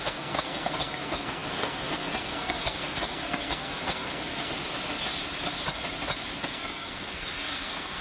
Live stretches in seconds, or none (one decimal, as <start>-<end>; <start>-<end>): 4.5-6.4